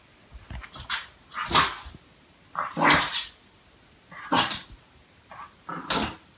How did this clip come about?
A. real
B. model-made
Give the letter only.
A